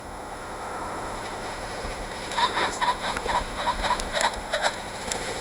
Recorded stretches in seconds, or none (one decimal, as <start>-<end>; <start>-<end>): none